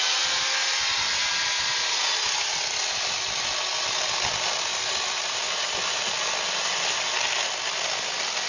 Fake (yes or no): no